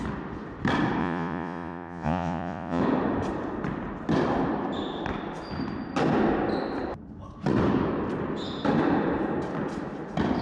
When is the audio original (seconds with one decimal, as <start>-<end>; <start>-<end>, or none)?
0.0-1.0; 2.8-10.4